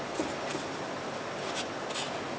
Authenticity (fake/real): real